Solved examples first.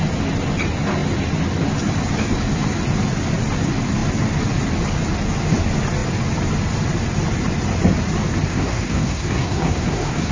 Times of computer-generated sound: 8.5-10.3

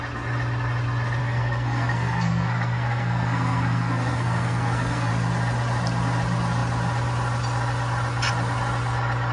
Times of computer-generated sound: 1.2-5.1